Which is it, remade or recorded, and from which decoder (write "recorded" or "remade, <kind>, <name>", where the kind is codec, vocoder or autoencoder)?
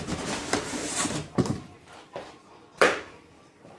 remade, vocoder, BigVGAN v2